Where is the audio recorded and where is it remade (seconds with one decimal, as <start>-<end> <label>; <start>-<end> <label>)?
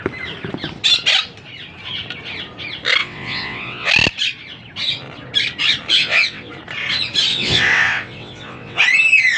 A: 0.0-3.0 recorded; 3.0-3.9 remade; 3.9-5.9 recorded; 5.9-6.5 remade; 6.5-7.3 recorded; 7.3-8.8 remade; 8.8-9.4 recorded